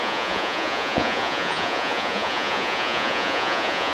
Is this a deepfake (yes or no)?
yes